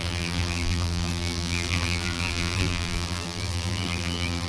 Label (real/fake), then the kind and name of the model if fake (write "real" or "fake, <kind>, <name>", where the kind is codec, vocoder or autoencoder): fake, vocoder, BigVGAN v2